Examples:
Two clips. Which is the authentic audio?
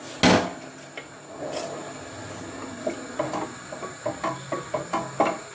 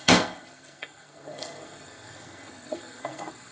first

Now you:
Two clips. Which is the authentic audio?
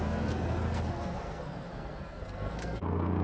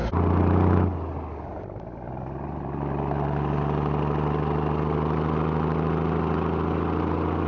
second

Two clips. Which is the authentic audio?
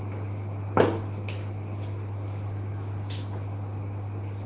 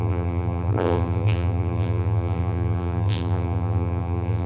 first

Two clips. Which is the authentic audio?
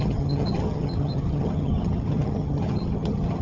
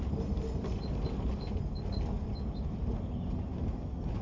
second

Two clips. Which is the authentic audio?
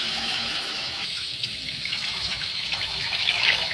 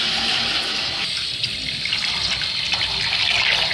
second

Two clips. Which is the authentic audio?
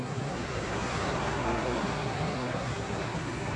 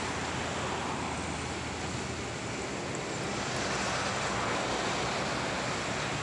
second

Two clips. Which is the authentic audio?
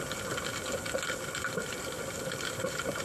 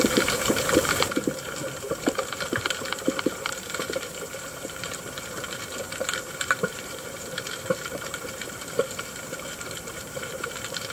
first